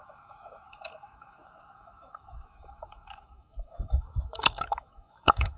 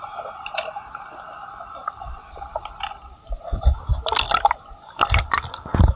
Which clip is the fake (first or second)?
first